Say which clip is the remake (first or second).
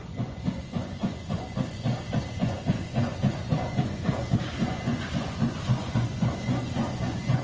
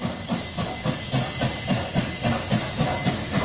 first